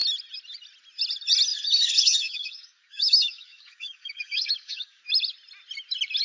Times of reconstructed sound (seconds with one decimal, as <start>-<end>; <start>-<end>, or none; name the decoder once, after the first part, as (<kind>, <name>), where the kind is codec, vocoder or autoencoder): 1.5-5.0 (codec, DAC)